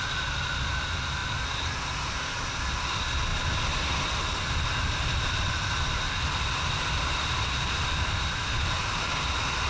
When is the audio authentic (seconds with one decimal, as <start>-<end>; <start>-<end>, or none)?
0.0-9.7